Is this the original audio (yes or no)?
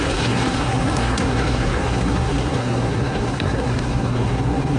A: no